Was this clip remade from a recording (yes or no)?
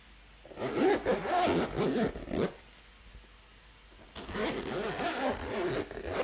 no